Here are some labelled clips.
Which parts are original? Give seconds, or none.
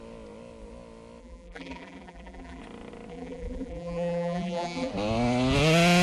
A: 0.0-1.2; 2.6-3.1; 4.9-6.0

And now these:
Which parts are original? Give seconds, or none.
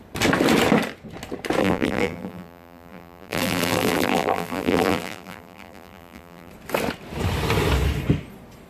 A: 0.0-1.6; 6.5-8.7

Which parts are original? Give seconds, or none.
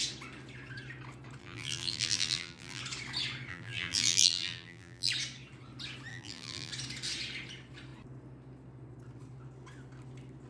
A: 0.0-1.4; 2.8-3.5; 5.1-6.1; 6.7-10.5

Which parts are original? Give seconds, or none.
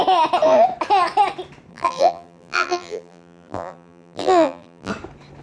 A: 0.0-1.7; 4.9-5.4